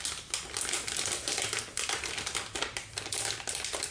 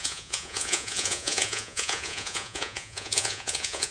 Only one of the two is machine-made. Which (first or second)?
second